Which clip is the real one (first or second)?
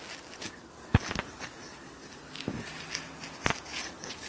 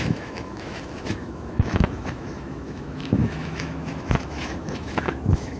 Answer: first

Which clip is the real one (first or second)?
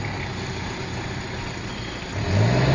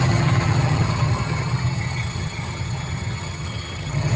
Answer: first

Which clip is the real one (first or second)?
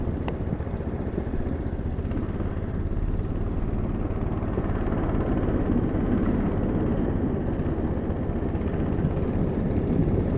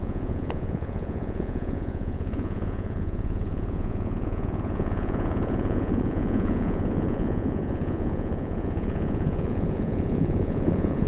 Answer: first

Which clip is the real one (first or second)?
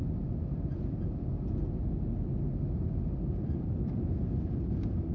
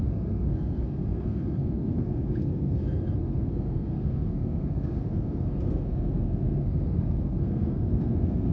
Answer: first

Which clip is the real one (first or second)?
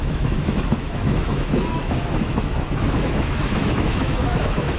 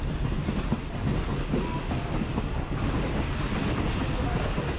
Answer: second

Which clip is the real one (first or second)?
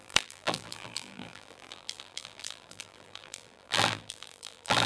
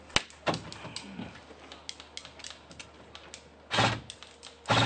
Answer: second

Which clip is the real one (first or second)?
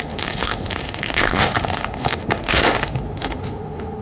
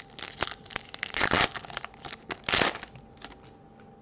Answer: second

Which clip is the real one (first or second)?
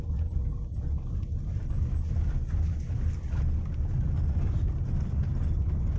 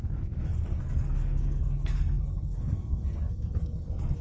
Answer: first